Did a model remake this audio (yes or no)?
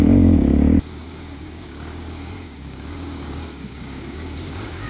yes